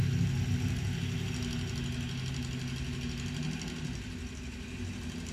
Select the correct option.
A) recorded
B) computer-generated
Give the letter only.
A